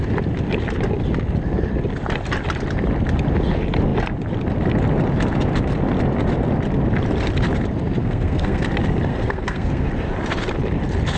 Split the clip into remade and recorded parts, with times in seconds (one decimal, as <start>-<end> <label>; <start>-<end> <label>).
0.0-8.0 recorded; 8.0-8.6 remade; 8.6-9.1 recorded; 9.1-9.9 remade; 9.9-11.2 recorded